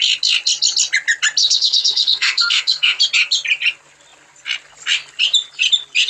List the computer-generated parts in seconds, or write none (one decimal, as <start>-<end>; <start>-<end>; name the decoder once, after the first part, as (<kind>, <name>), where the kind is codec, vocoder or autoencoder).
1.4-3.0 (codec, SNAC)